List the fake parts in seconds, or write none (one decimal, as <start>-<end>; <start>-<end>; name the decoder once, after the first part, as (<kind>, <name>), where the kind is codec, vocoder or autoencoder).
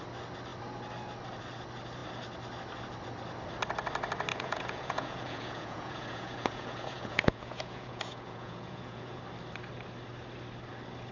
4.3-9.2 (vocoder, Vocos)